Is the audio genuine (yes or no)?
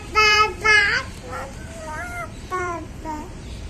no